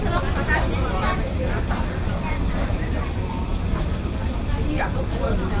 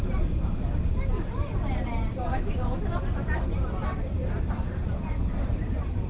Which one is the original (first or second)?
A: first